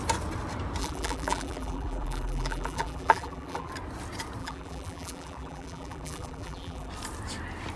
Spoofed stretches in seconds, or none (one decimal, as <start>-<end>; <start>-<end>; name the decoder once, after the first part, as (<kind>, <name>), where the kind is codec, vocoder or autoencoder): 0.8-3.7 (vocoder, BigVGAN v2); 4.4-6.9